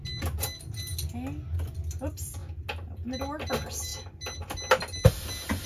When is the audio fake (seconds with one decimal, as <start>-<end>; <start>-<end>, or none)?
none